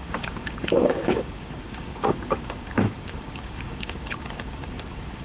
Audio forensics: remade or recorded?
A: remade